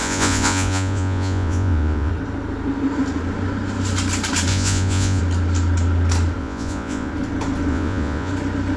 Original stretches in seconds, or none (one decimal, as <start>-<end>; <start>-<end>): 2.1-4.5; 5.2-6.4; 7.1-7.7; 8.3-8.8